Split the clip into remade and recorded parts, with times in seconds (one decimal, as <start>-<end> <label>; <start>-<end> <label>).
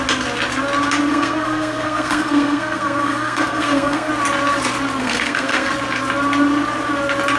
0.0-1.1 recorded; 1.1-4.1 remade; 4.1-5.0 recorded; 5.0-5.7 remade; 5.7-7.4 recorded